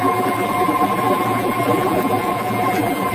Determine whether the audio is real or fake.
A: fake